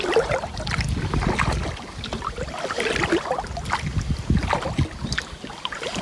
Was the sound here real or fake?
real